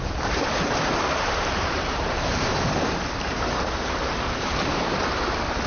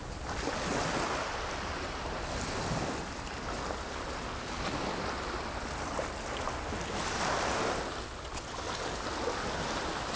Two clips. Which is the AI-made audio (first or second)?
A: first